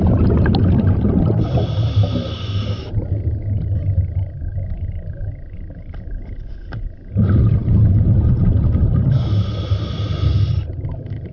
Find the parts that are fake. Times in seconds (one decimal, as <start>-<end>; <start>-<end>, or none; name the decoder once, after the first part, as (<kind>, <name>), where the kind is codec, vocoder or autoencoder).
none